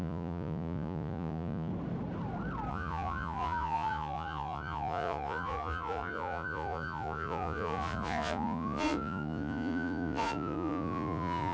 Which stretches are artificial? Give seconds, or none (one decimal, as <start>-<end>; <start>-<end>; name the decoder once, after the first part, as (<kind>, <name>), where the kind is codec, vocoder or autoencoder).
0.0-1.7 (vocoder, Vocos); 2.7-11.5